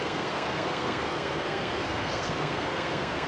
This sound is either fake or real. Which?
fake